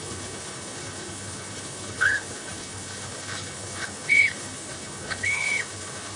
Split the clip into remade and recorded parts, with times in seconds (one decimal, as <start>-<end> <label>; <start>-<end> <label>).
0.0-6.2 remade